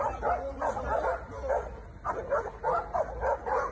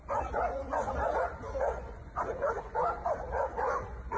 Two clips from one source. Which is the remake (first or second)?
second